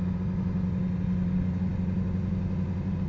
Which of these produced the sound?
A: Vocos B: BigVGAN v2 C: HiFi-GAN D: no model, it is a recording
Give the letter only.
D